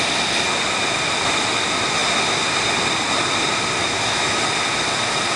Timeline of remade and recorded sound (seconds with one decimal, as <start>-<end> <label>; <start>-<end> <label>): 0.0-3.8 recorded; 3.8-4.4 remade; 4.4-5.4 recorded

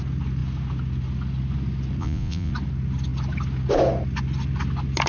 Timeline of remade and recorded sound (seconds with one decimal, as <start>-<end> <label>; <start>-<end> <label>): 0.0-2.0 recorded; 2.0-2.5 remade; 2.5-5.1 recorded